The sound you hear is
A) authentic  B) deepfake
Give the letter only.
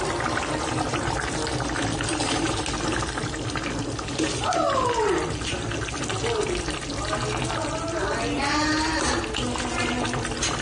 A